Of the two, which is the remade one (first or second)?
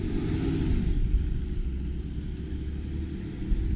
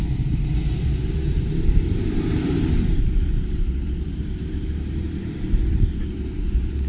second